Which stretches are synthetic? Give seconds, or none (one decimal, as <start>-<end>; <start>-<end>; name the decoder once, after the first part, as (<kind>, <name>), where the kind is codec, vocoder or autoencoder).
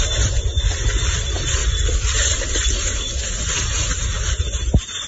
0.0-1.6 (vocoder, BigVGAN v2); 2.4-2.9; 3.6-5.1